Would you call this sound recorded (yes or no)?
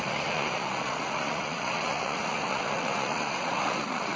no